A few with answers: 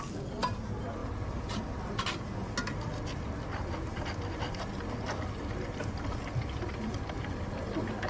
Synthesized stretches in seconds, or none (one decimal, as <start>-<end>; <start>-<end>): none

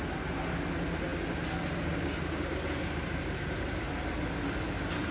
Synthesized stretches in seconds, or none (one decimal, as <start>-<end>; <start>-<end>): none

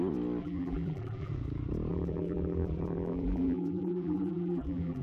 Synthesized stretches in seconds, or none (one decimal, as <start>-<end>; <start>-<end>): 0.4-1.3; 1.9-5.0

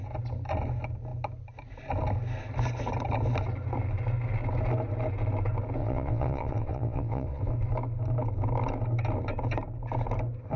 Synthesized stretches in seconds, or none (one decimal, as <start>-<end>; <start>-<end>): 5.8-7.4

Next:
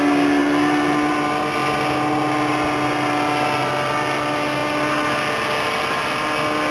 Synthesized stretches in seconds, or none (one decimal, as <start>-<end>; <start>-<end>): none

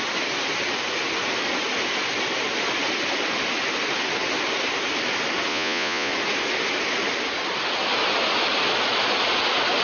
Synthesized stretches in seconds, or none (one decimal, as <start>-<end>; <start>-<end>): 5.5-6.1

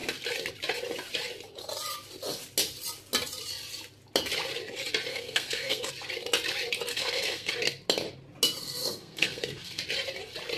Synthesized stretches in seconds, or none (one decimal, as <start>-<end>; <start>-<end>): 5.1-5.9; 6.9-7.5; 8.6-9.8